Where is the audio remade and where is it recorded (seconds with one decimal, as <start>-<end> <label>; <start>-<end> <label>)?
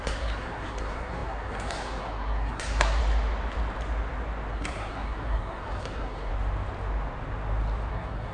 0.0-3.0 remade; 3.0-4.5 recorded; 4.5-6.3 remade; 6.3-7.9 recorded; 7.9-8.3 remade